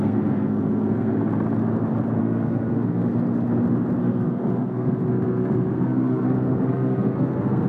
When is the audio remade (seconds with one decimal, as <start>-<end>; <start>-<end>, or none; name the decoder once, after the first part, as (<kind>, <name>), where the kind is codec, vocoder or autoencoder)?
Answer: 0.0-1.1 (codec, SNAC); 2.2-3.1; 4.0-7.7